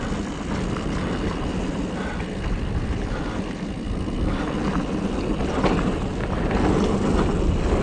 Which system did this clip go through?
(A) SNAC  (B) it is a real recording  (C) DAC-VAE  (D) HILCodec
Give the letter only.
B